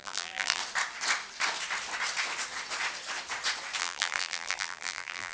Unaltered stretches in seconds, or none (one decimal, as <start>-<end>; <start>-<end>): 0.6-3.8